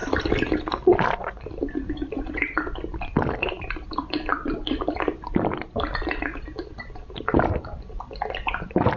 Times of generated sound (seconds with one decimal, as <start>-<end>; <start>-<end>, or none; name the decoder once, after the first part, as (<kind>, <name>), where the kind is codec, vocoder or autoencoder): 0.0-9.0 (vocoder, BigVGAN v2)